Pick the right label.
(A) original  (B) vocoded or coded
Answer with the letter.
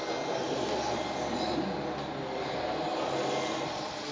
A